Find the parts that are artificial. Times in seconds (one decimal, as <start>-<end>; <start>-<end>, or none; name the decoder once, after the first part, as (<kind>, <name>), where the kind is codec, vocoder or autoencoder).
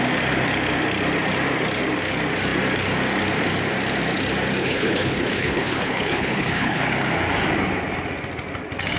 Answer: 4.6-6.8 (codec, HILCodec)